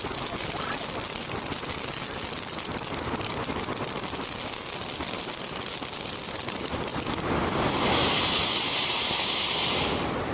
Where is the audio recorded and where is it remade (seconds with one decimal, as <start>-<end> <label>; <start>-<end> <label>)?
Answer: 0.0-10.3 recorded